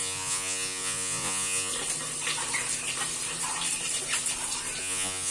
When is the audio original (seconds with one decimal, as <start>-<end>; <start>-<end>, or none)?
1.7-4.8